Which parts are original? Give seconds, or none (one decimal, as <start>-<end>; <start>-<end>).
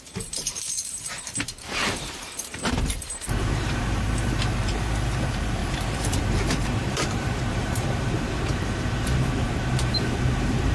none